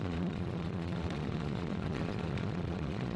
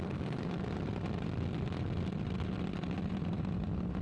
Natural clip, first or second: second